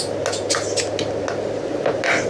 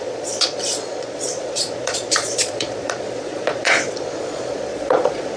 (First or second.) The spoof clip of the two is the second